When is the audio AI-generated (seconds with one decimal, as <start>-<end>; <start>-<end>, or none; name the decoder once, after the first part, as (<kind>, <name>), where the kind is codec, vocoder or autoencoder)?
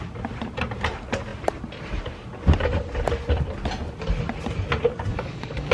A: 5.1-5.7 (codec, DAC)